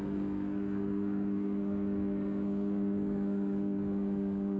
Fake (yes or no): yes